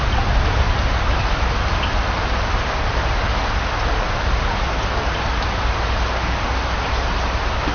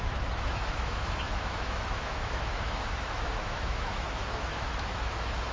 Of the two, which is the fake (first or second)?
second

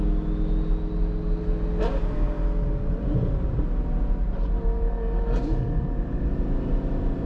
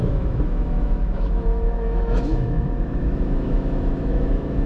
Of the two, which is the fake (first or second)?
second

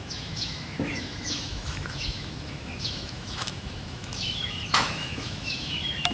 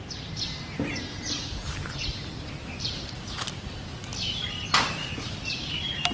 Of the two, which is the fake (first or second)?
first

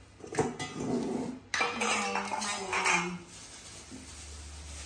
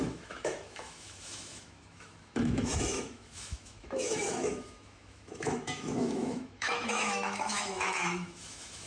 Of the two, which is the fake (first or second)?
second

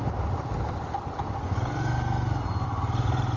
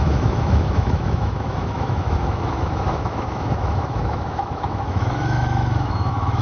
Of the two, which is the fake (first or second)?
second